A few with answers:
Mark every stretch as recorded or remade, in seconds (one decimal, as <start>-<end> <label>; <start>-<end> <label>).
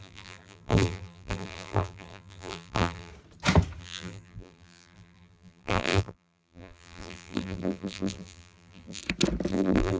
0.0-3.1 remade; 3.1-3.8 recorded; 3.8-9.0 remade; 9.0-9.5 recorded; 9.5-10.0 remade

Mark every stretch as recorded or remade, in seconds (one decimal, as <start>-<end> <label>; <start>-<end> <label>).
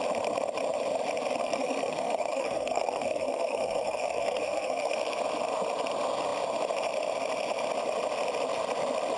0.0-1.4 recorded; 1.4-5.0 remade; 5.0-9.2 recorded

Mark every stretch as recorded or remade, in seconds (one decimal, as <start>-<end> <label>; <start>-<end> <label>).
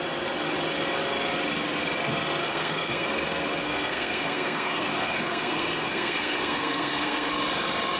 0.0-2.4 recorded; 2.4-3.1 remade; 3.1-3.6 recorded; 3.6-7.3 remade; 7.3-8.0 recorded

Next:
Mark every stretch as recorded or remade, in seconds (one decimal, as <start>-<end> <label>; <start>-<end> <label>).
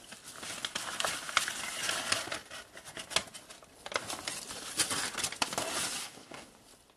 0.0-6.0 recorded; 6.0-6.5 remade; 6.5-7.0 recorded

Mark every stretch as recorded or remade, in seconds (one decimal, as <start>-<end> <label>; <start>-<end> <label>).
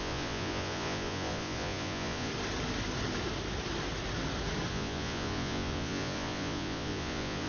0.0-2.3 remade; 2.3-4.7 recorded; 4.7-7.5 remade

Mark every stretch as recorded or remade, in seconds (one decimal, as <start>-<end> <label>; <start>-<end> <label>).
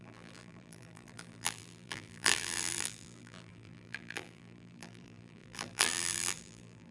0.0-6.9 remade